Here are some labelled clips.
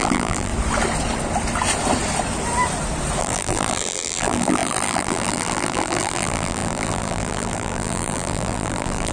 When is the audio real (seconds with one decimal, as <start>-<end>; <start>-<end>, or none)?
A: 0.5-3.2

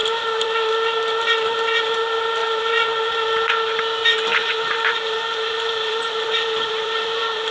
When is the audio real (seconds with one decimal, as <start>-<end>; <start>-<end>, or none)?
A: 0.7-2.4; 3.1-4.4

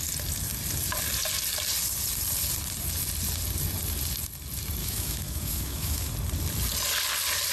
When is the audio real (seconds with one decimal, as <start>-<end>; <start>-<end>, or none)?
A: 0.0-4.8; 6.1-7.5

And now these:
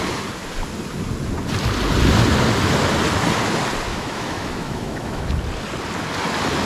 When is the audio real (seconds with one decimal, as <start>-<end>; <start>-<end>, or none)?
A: 0.0-3.9; 5.2-6.7

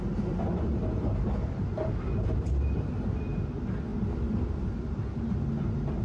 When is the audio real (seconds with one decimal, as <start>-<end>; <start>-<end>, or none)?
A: 0.0-6.0

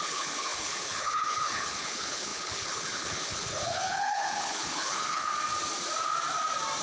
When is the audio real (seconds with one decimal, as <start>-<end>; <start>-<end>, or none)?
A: 5.3-6.8